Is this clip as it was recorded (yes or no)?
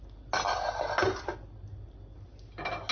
yes